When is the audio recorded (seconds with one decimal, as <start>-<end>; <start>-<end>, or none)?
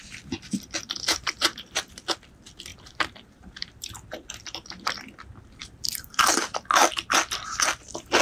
0.0-1.1; 2.1-2.7; 3.9-5.6; 6.9-8.2